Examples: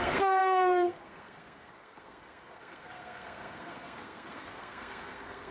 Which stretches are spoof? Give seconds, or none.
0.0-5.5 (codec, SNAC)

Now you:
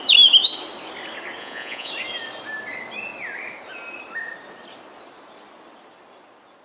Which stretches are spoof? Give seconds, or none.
1.4-1.9 (vocoder, Vocos)

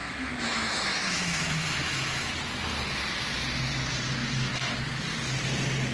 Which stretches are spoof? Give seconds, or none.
0.0-2.3 (autoencoder, DAC-VAE)

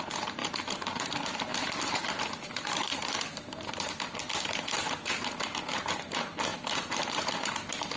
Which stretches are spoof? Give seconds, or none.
0.0-8.0 (vocoder, BigVGAN v2)